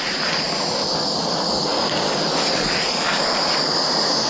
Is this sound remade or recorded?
recorded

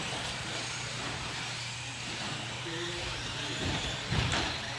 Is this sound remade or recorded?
remade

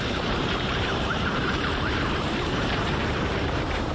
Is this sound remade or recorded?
remade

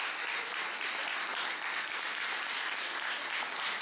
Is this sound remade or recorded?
recorded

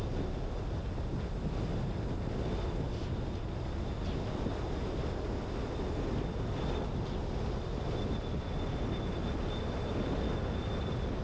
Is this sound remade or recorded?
recorded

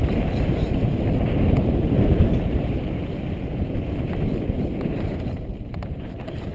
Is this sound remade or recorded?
remade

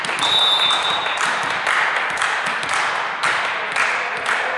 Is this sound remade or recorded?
recorded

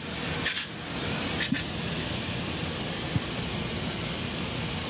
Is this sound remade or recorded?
recorded